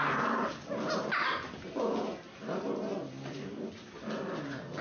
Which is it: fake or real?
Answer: real